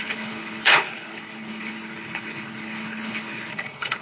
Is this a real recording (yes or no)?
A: no